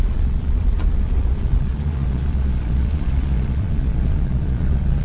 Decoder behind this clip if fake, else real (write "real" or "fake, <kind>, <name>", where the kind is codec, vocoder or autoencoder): fake, vocoder, Vocos